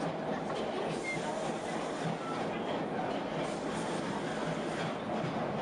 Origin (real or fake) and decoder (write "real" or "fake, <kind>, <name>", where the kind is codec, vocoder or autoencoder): real